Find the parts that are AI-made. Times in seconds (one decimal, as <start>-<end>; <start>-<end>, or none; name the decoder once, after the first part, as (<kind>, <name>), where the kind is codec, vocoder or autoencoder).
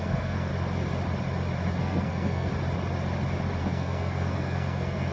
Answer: 0.0-0.5 (codec, SNAC); 1.8-2.5; 3.6-5.1